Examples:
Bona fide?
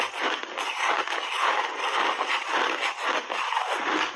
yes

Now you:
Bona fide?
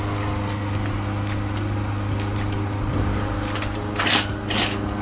yes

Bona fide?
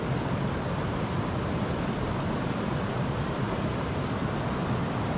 yes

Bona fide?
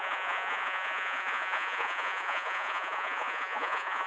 no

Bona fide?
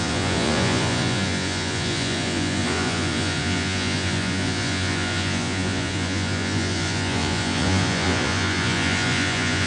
no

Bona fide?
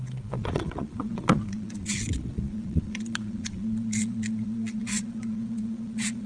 no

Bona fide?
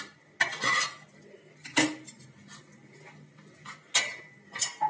yes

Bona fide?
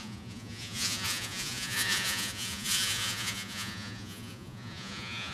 no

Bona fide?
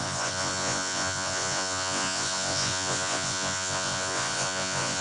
no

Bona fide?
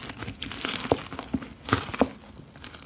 yes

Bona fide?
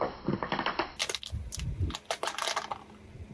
yes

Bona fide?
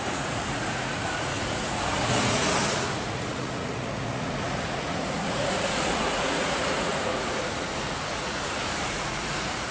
no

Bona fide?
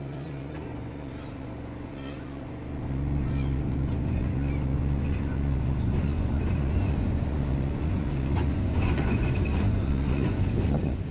no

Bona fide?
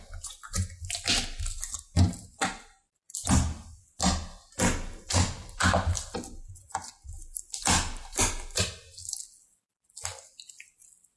yes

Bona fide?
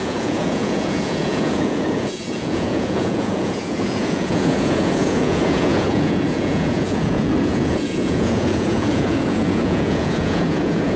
no